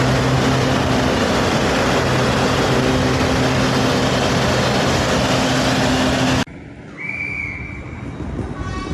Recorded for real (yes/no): yes